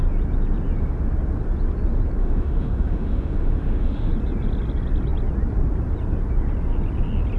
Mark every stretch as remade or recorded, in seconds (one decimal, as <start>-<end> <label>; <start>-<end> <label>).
0.0-2.2 recorded; 2.2-4.1 remade; 4.1-7.4 recorded